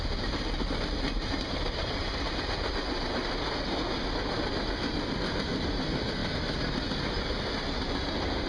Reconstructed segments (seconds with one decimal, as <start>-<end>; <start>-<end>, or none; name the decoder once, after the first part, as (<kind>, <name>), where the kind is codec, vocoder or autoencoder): none